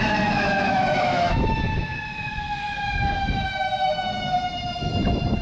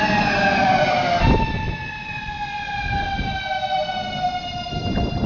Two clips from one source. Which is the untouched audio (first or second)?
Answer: second